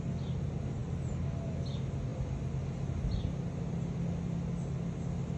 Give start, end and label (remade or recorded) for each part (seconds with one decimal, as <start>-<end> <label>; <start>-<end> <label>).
0.0-5.4 recorded